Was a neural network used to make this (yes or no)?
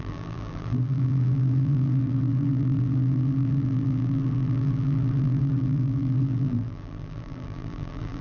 yes